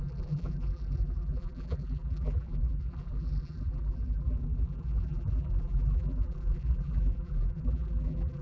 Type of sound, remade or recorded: remade